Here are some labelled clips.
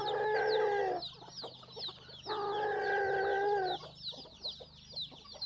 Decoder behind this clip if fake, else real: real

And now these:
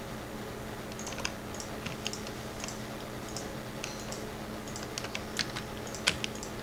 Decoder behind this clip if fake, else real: real